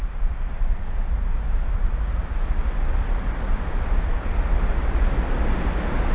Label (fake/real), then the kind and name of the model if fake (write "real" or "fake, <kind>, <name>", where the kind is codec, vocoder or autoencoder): real